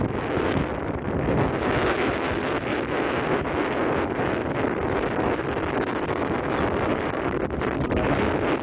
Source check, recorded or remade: recorded